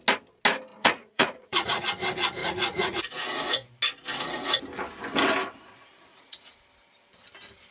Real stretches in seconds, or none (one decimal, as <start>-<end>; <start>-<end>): 0.0-0.7; 1.8-2.4; 3.0-6.1; 6.6-7.7